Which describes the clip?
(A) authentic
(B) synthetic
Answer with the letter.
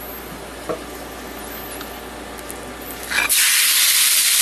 A